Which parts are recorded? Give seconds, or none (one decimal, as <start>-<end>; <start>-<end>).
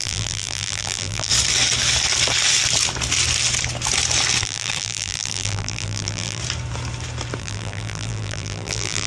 1.3-4.4; 6.4-7.4